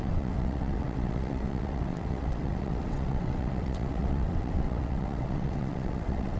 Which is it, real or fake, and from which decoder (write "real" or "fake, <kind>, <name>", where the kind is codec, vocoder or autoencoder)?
fake, vocoder, WaveNeXt